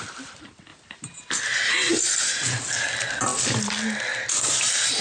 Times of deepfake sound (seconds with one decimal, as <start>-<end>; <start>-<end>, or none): none